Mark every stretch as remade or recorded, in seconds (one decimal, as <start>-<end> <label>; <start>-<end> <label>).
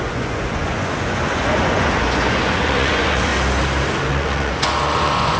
0.0-3.3 remade; 3.3-4.1 recorded; 4.1-5.4 remade